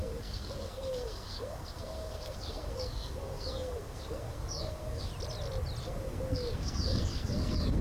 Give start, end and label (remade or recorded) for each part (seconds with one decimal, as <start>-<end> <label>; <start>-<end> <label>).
0.0-5.1 remade; 5.1-5.8 recorded; 5.8-7.8 remade